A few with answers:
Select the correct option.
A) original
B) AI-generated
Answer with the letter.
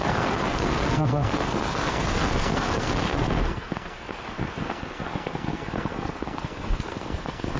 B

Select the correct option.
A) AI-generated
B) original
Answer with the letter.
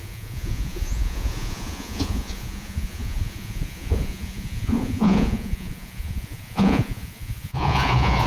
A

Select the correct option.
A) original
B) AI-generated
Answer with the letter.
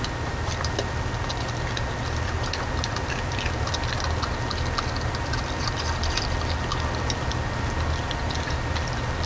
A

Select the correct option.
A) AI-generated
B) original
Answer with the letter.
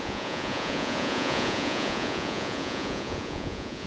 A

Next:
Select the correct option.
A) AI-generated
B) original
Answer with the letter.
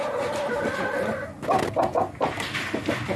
B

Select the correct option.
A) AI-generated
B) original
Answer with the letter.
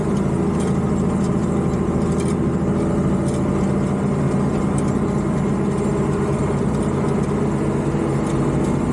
B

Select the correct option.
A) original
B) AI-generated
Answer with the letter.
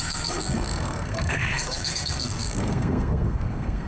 B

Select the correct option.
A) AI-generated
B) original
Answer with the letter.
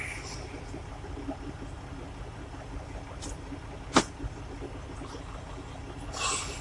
B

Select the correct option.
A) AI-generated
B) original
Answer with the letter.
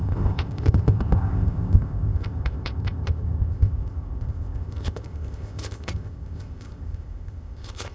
A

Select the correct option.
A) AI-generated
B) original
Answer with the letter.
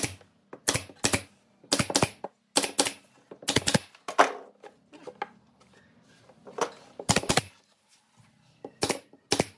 B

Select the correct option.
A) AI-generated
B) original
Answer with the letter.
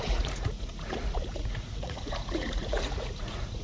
A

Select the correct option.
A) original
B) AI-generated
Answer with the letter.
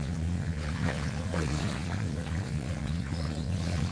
B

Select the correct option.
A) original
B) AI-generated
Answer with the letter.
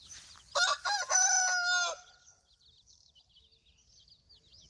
A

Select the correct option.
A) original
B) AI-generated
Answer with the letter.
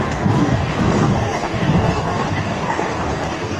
B